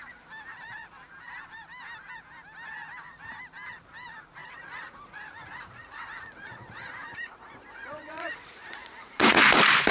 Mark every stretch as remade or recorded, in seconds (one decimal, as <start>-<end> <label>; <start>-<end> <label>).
0.0-4.4 recorded; 4.4-9.4 remade; 9.4-9.9 recorded